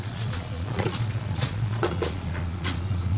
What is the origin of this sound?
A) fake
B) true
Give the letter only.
A